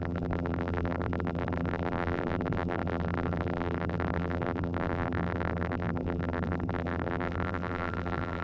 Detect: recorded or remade remade